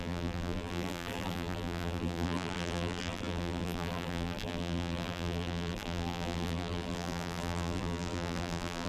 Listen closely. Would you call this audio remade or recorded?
remade